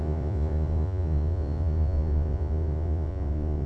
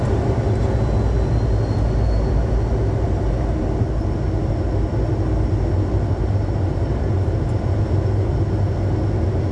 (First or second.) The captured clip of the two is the second